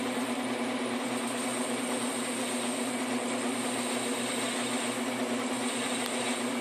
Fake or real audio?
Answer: real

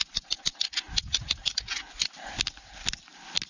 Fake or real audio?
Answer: real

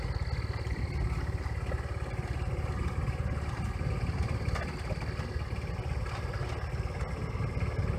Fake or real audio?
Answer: real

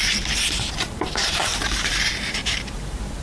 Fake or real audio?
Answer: fake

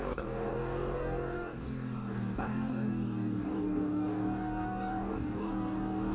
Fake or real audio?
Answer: fake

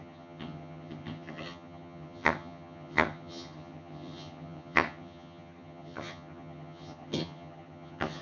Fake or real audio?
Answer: fake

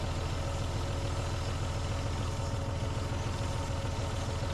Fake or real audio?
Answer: real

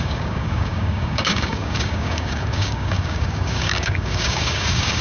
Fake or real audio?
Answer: fake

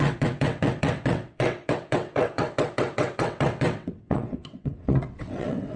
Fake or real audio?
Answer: fake